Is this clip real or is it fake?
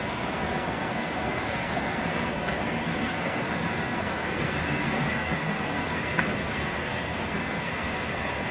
fake